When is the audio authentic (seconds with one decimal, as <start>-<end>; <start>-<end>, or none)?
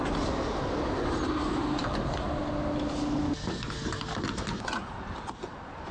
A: 0.0-5.9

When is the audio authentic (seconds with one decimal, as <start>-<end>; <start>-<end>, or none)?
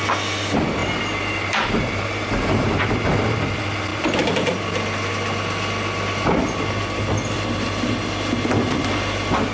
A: 0.0-0.8; 2.8-9.5